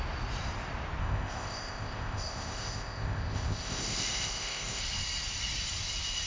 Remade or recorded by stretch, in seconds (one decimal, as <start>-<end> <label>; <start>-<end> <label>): 0.0-1.0 recorded; 1.0-4.8 remade; 4.8-6.3 recorded